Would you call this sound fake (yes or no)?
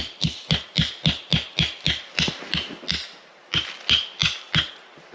no